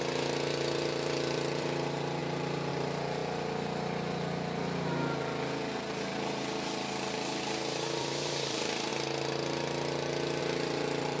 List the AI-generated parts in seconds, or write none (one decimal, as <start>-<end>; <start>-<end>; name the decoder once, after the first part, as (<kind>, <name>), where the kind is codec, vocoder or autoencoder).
0.0-2.2 (vocoder, BigVGAN v2); 2.7-3.2; 8.0-8.9; 10.4-11.2